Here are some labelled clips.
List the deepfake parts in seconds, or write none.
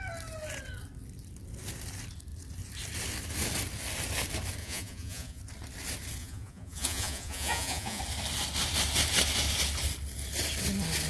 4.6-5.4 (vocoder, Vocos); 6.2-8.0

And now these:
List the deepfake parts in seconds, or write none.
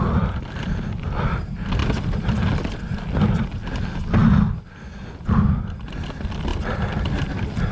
none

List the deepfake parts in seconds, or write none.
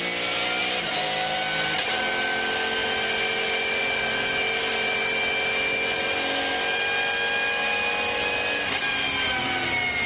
none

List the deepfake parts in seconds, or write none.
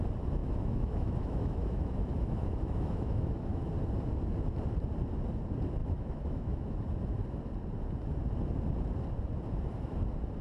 0.4-3.7 (autoencoder, DAC-VAE); 5.8-6.8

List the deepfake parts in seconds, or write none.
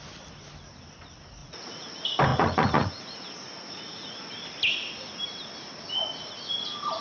1.4-1.9 (vocoder, Vocos); 2.3-4.2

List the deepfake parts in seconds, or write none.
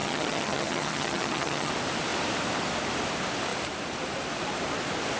0.0-1.7 (vocoder, HiFi-GAN)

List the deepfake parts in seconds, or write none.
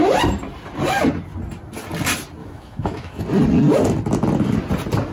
2.4-3.2 (autoencoder, DAC-VAE)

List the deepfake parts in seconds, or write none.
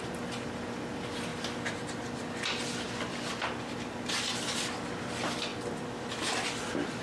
none